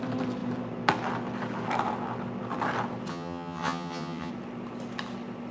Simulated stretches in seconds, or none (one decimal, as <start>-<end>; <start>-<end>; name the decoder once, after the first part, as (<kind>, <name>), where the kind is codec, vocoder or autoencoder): 3.1-4.3 (vocoder, HiFi-GAN)